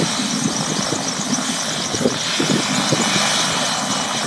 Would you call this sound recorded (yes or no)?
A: yes